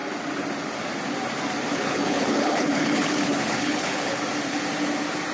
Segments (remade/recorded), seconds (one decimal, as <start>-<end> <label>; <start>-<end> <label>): 0.0-1.7 recorded; 1.7-4.2 remade; 4.2-5.3 recorded